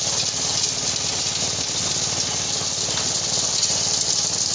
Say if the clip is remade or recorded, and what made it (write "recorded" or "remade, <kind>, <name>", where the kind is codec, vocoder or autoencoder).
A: recorded